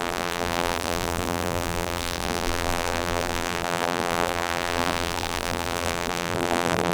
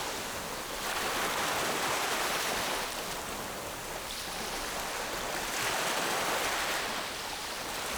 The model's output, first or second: first